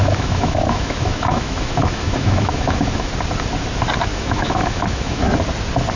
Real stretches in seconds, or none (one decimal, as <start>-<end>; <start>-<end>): 3.1-4.1; 5.2-6.0